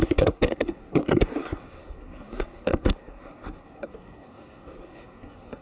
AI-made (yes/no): yes